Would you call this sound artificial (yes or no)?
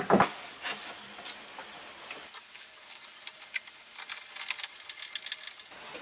no